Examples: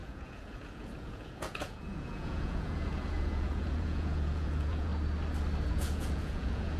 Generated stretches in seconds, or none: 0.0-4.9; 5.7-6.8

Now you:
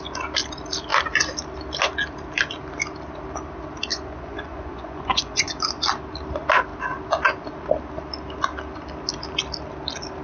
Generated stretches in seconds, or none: 3.9-5.5